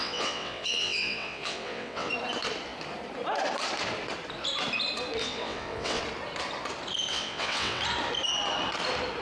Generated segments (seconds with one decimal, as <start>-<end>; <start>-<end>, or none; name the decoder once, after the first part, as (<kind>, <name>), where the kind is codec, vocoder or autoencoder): 0.0-2.1 (vocoder, WaveNeXt); 5.2-6.0; 7.1-7.8